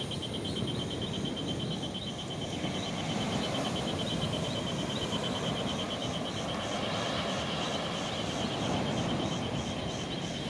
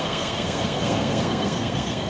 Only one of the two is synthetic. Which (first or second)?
second